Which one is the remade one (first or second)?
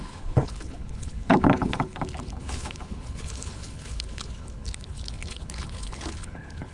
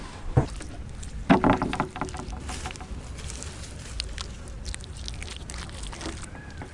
first